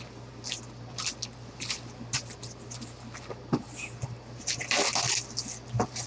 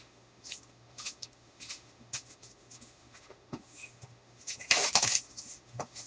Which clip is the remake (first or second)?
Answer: second